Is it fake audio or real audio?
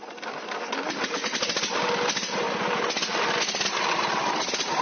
real